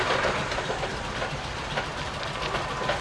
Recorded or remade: remade